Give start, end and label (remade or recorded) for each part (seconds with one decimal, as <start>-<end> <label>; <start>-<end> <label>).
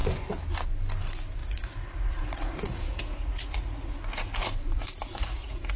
0.0-1.4 recorded; 1.4-3.9 remade; 3.9-5.1 recorded; 5.1-5.8 remade